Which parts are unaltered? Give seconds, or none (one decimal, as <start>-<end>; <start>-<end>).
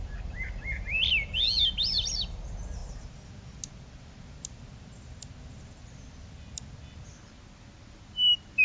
1.1-8.6